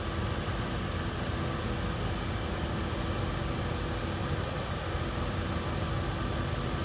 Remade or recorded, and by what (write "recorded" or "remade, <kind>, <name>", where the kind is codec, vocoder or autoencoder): recorded